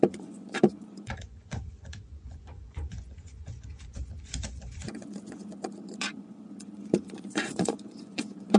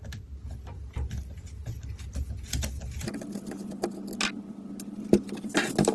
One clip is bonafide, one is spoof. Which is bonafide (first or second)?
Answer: second